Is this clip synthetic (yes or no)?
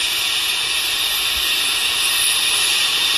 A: no